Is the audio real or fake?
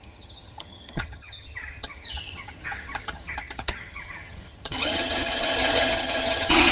fake